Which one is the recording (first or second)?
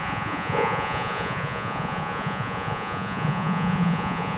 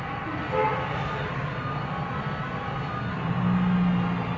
second